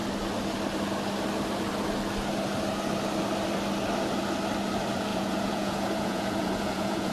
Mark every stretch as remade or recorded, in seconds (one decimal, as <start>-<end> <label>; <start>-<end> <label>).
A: 0.0-5.1 recorded; 5.1-7.1 remade